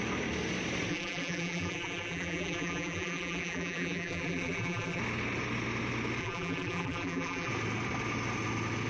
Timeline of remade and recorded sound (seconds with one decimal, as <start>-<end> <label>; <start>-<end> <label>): 0.0-0.9 recorded; 0.9-5.0 remade; 5.0-6.2 recorded; 6.2-7.5 remade; 7.5-8.9 recorded

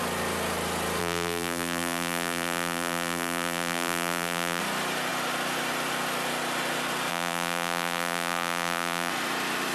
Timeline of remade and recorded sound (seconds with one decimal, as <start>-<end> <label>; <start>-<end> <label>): 0.0-1.0 recorded; 1.0-4.6 remade; 4.6-7.1 recorded; 7.1-9.1 remade; 9.1-9.7 recorded

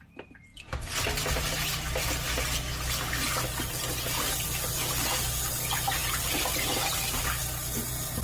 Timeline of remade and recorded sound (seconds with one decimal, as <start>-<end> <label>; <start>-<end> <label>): 0.0-6.0 recorded; 6.0-7.0 remade; 7.0-8.2 recorded

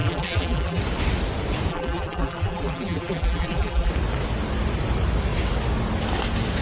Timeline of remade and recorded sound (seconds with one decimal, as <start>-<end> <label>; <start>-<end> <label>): 0.0-0.8 remade; 0.8-1.7 recorded; 1.7-3.9 remade; 3.9-6.6 recorded

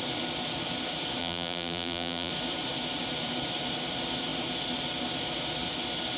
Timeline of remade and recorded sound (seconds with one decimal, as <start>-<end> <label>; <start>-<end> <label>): 0.0-1.2 recorded; 1.2-2.3 remade; 2.3-6.2 recorded

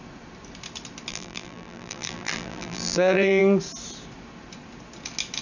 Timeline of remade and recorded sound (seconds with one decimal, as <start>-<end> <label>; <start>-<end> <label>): 0.0-1.1 recorded; 1.1-3.4 remade; 3.4-5.4 recorded